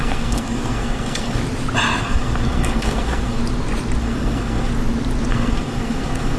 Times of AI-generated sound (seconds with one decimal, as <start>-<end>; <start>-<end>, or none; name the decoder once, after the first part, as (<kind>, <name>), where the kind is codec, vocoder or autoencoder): 0.0-1.4 (codec, SNAC); 2.0-3.4; 4.0-4.7; 5.3-6.4